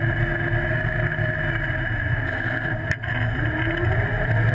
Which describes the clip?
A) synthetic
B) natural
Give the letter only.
B